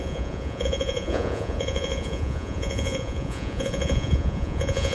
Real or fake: fake